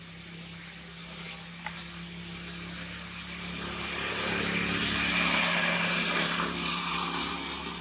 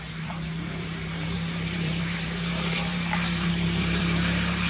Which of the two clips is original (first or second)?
first